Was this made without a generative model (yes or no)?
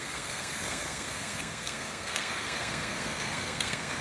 no